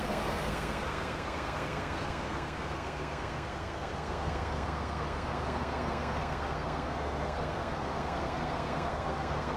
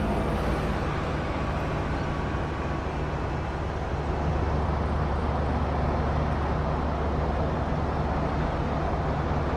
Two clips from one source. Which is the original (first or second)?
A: second